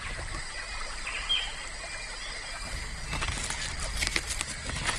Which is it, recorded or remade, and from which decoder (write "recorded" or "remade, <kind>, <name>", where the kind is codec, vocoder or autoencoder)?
recorded